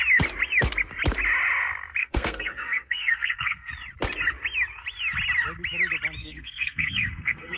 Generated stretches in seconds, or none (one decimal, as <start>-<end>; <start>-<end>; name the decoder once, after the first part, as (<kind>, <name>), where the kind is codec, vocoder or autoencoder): 2.0-3.7 (codec, SNAC); 6.2-7.6